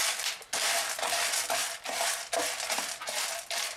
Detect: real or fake real